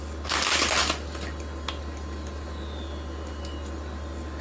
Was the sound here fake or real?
real